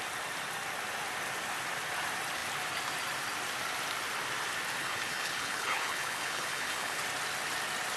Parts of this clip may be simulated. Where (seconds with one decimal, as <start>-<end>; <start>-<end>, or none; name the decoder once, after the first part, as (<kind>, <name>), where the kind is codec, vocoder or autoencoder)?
4.8-7.0 (codec, HILCodec)